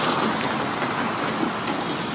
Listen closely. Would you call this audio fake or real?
real